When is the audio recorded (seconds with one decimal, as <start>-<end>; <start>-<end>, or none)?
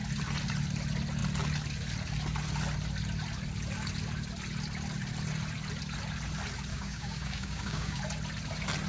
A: 0.0-6.7; 8.0-8.9